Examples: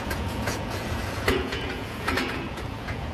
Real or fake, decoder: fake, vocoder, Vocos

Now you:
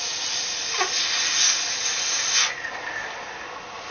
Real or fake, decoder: real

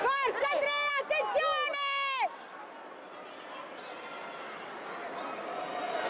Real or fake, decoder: real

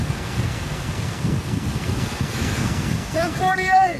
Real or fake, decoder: fake, codec, SNAC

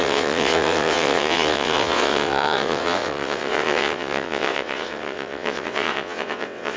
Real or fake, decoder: fake, vocoder, WaveNeXt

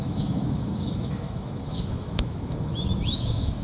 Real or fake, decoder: fake, autoencoder, DAC-VAE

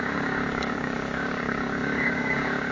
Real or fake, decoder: fake, codec, DAC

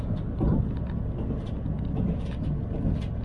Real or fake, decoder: real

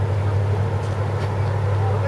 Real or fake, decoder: real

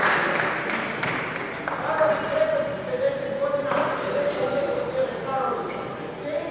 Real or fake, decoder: real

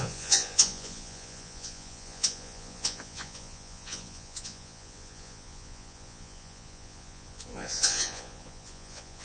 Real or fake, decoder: fake, vocoder, Vocos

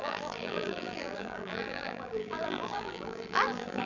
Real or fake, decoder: fake, vocoder, BigVGAN v2